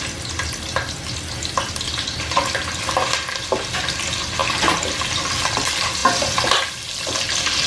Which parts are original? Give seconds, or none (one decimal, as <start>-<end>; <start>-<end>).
0.0-7.7